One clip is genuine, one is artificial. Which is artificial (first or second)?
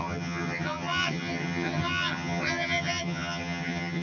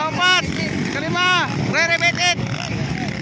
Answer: first